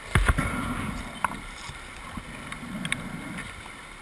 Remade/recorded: recorded